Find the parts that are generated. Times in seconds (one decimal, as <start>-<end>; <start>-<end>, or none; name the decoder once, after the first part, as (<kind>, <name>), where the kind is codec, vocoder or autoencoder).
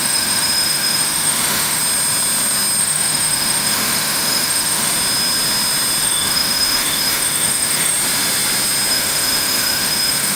0.0-1.8 (autoencoder, DAC-VAE); 2.8-4.9; 6.0-7.9; 8.9-10.4